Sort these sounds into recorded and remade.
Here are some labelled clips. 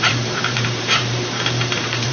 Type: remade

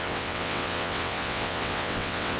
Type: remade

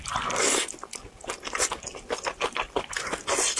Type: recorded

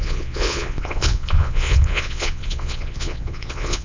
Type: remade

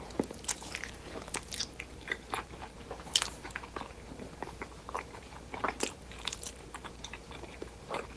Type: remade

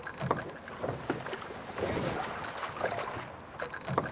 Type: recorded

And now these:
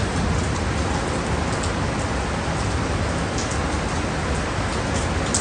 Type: recorded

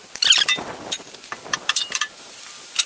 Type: recorded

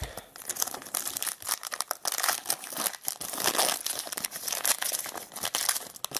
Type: recorded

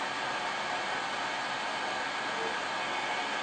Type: recorded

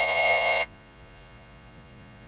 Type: remade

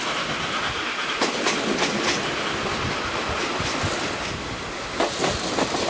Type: recorded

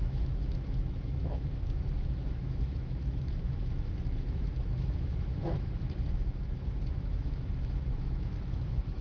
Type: remade